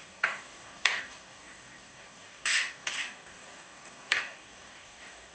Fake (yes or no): yes